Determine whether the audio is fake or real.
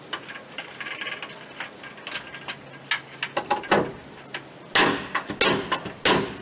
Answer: real